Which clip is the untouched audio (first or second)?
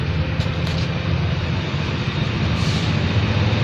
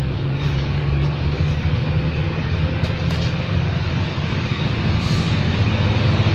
first